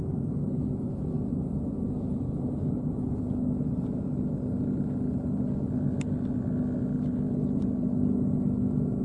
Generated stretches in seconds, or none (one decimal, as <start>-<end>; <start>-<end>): none